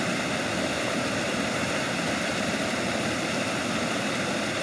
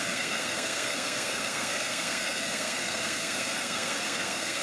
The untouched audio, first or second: first